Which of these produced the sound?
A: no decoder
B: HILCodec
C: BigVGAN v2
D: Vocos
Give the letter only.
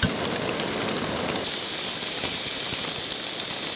A